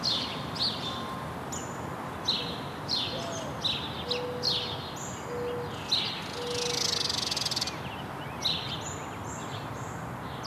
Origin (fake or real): real